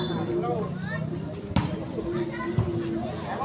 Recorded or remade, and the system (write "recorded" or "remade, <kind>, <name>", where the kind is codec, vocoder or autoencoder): recorded